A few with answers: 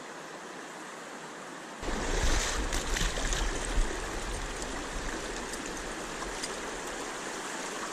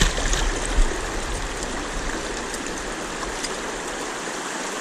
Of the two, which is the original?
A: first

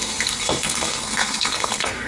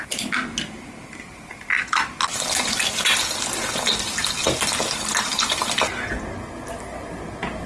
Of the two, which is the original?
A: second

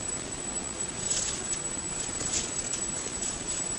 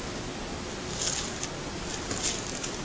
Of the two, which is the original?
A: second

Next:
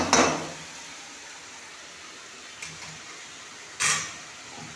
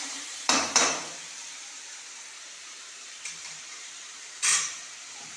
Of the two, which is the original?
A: first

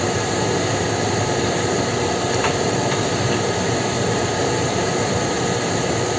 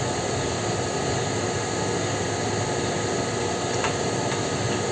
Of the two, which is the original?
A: second